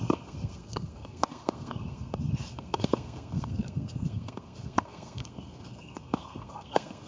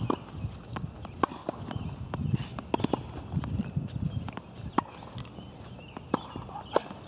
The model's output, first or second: first